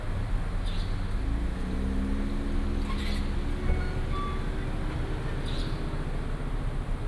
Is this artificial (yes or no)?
no